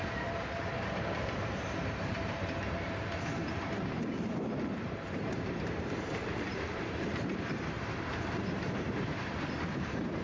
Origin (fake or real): fake